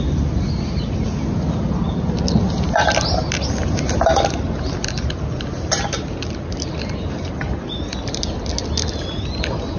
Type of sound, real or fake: real